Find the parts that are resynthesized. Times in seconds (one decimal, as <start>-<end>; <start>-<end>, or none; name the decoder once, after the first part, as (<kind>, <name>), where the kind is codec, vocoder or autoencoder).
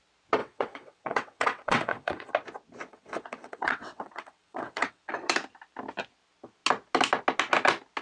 0.4-2.3 (vocoder, WaveNeXt); 2.9-5.1